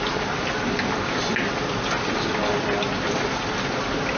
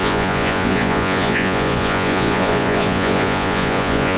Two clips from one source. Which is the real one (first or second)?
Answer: first